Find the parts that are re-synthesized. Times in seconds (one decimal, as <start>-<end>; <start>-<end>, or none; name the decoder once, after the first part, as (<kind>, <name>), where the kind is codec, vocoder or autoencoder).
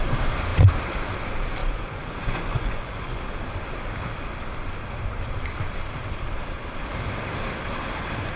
1.6-3.2 (vocoder, Vocos)